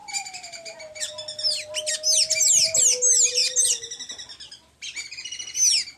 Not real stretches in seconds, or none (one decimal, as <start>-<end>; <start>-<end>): 0.0-1.9